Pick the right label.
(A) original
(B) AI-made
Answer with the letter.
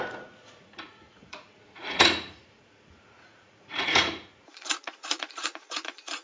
B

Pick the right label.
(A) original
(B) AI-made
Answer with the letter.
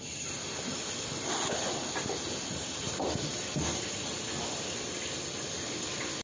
A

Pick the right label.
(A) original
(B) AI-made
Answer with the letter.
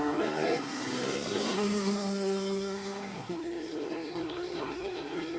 B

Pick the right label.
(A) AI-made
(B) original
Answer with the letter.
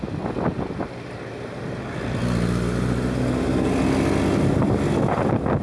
B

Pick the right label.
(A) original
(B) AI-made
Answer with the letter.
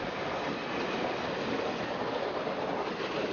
A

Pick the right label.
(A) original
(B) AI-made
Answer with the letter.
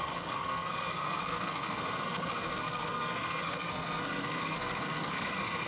B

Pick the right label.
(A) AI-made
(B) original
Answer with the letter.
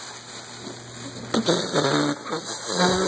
B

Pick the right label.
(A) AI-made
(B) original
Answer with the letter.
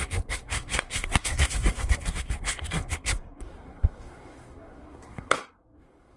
A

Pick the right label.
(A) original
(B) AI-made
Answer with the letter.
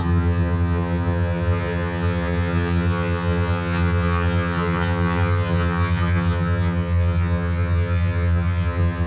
B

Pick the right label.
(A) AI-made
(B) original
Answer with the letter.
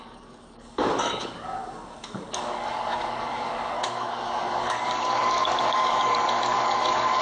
A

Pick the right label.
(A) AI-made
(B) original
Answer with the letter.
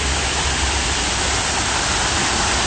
B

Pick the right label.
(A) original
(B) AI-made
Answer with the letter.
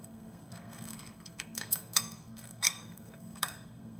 B